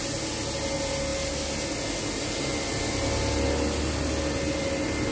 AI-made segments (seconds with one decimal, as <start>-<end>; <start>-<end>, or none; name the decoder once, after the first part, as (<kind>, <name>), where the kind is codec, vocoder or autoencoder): none